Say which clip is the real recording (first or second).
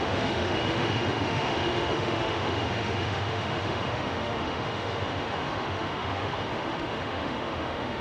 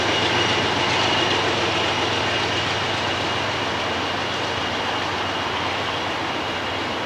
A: second